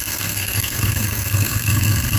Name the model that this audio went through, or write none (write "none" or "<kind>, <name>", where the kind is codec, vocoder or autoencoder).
codec, SNAC